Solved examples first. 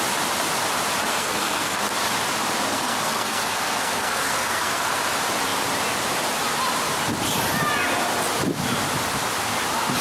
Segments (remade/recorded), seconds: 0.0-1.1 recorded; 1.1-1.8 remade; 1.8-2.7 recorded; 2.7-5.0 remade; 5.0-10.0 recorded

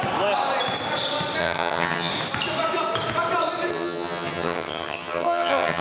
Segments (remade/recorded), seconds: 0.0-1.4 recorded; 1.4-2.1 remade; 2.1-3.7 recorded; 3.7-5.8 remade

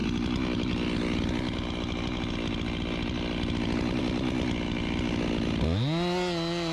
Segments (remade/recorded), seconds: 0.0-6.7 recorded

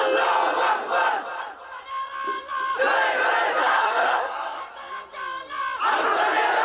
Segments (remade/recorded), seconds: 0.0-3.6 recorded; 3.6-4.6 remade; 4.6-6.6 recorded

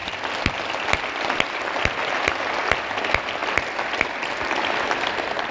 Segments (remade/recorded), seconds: 0.0-5.5 recorded

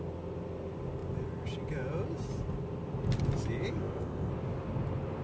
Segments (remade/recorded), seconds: 0.0-3.8 recorded; 3.8-4.3 remade; 4.3-5.2 recorded

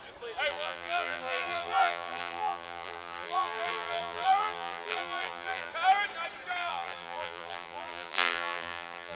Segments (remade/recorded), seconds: 0.0-0.5 recorded; 0.5-5.7 remade; 5.7-6.6 recorded; 6.6-9.2 remade